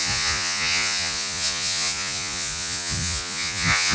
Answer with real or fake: fake